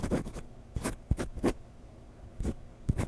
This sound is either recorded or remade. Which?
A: remade